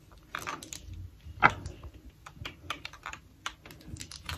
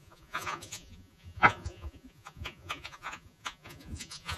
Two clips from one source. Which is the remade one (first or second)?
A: second